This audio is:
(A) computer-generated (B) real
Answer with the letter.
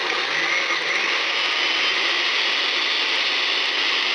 B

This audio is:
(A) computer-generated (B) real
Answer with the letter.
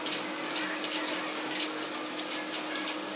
B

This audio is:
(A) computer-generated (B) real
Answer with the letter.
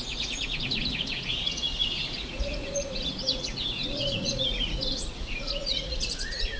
A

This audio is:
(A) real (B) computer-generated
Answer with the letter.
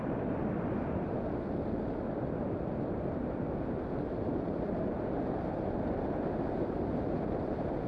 A